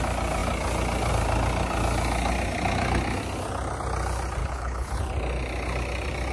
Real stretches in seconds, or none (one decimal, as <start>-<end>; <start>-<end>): 0.0-4.4; 5.0-6.3